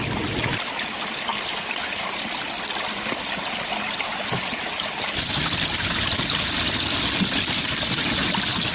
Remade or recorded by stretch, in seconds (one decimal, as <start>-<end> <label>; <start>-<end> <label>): 0.0-8.7 recorded